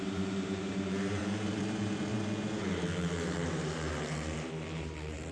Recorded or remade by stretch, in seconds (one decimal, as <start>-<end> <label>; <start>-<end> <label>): 0.0-5.3 remade